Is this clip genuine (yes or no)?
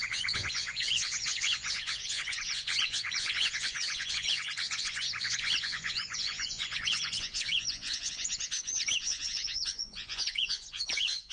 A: no